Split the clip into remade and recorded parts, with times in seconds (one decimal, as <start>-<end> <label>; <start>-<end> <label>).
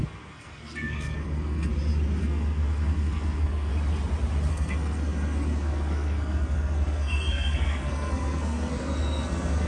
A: 0.0-1.7 remade; 1.7-2.2 recorded; 2.2-3.7 remade; 3.7-4.5 recorded; 4.5-9.7 remade